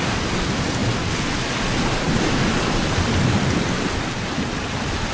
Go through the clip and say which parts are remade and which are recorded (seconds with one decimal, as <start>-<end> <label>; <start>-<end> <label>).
0.0-5.1 recorded